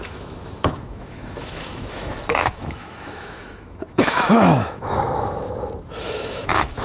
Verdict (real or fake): fake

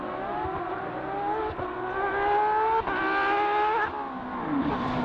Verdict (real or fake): real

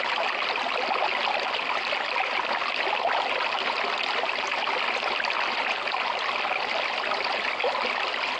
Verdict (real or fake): real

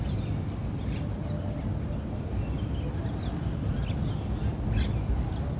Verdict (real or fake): real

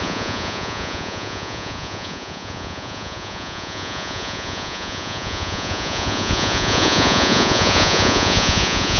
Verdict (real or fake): fake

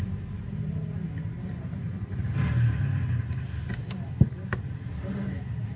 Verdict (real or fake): real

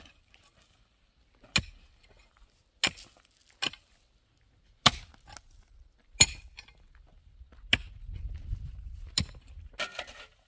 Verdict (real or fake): real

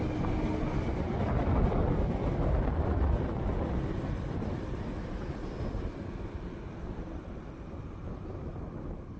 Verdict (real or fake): real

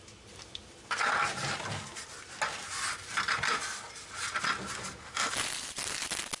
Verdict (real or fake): real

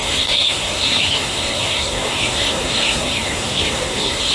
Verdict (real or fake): fake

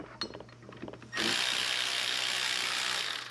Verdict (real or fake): real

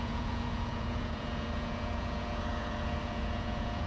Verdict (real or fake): fake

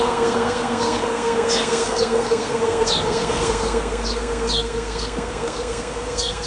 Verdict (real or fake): fake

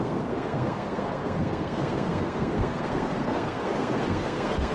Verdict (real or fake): fake